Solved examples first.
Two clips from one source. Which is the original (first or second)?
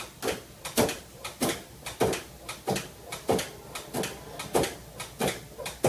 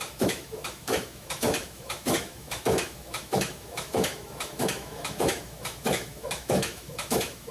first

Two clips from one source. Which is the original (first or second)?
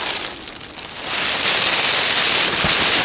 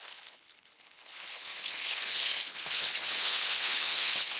first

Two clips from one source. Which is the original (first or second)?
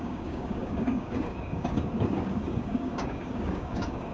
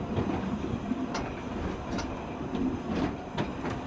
second